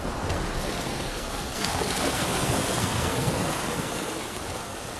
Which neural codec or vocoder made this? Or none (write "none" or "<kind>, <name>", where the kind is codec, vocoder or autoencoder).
codec, SNAC